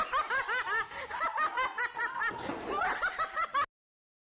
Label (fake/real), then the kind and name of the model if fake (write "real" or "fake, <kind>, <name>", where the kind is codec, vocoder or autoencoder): real